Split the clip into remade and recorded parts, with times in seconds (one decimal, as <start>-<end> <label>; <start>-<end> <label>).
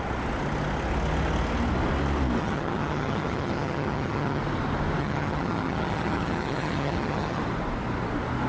0.0-2.4 recorded; 2.4-4.4 remade; 4.4-5.0 recorded; 5.0-7.4 remade; 7.4-8.5 recorded